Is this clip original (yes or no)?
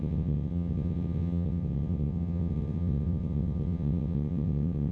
no